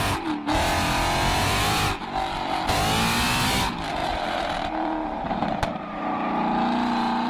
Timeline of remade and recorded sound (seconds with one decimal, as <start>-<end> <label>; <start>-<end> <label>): 0.0-4.0 recorded; 4.0-6.0 remade; 6.0-7.3 recorded